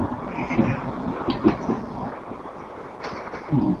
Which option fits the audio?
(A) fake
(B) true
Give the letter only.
B